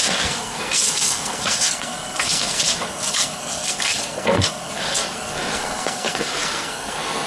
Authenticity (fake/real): fake